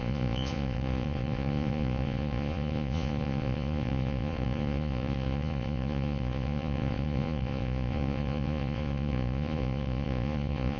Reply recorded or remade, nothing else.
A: remade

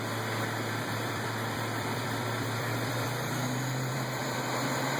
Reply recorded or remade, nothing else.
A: remade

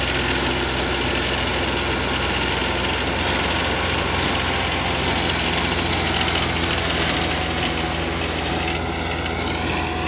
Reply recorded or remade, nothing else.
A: recorded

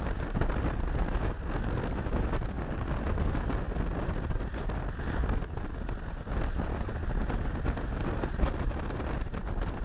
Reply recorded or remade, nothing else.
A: recorded